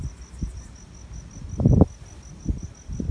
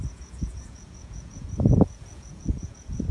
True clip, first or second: first